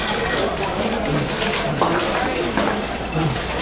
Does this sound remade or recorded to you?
recorded